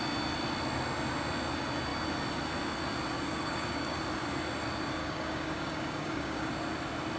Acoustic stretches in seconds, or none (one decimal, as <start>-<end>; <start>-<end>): 0.0-3.3; 4.0-5.0; 6.5-7.2